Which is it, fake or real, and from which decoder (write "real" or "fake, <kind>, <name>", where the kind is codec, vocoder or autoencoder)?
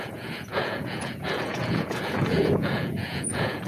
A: fake, vocoder, Vocos